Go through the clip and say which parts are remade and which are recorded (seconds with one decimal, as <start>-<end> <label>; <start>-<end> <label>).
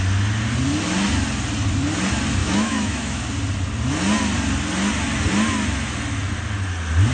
0.0-2.4 recorded; 2.4-3.2 remade; 3.2-7.1 recorded